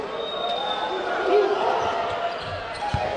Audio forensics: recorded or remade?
recorded